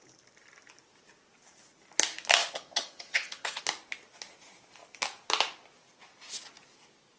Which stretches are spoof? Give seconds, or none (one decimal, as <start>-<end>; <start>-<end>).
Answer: 2.4-3.6